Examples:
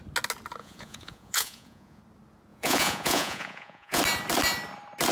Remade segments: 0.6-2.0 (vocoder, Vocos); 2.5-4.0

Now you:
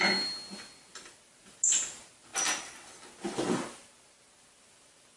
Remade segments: none

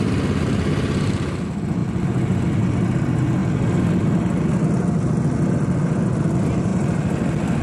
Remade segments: none

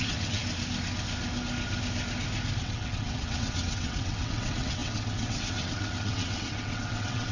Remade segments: 0.0-0.4 (vocoder, WaveNeXt); 2.6-7.3

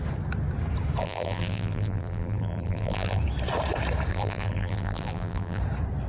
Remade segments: 1.0-3.2 (vocoder, BigVGAN v2); 4.1-5.6

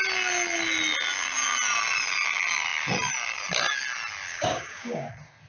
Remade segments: 4.3-5.1 (codec, DAC)

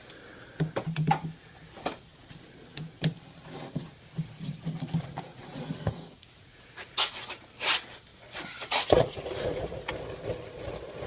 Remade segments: 5.3-7.2 (vocoder, Vocos); 8.1-9.9

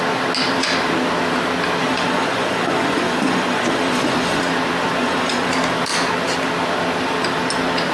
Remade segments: 1.8-4.5 (vocoder, Vocos); 5.0-5.5